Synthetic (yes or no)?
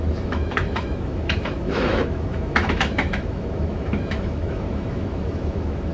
yes